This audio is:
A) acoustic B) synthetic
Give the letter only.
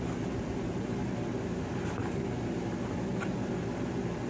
A